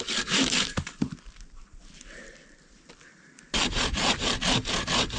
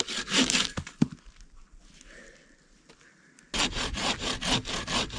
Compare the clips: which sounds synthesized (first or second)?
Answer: first